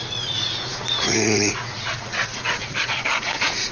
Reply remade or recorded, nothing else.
remade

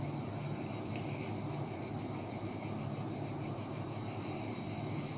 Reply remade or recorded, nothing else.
recorded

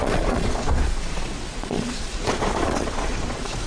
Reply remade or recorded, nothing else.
remade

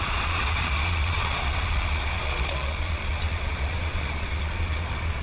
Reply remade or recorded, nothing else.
remade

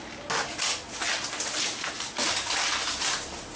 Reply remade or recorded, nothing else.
recorded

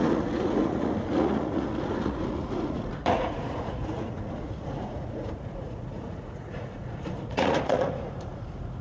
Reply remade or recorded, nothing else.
remade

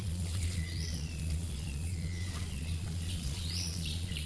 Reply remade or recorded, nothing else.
remade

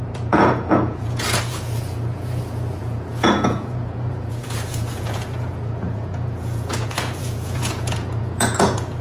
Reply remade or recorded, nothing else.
remade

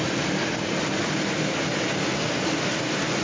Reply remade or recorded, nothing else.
recorded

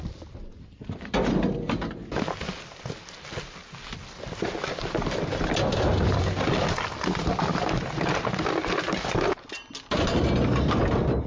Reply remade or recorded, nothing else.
recorded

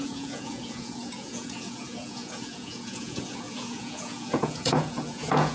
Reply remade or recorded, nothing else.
remade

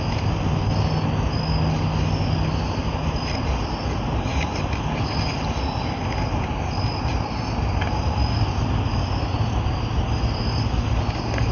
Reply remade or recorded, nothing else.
recorded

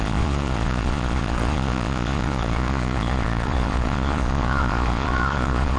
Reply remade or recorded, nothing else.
remade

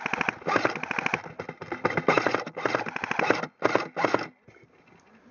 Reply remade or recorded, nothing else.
recorded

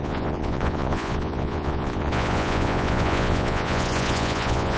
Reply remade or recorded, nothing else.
remade